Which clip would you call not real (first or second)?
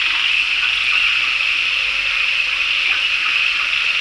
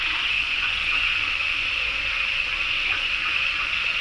second